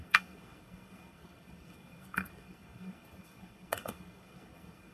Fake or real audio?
fake